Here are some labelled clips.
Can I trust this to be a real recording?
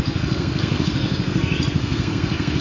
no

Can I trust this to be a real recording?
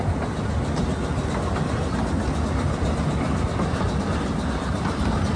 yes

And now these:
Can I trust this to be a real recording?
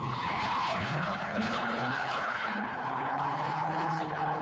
no